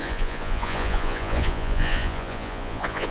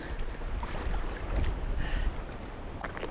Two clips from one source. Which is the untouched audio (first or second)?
second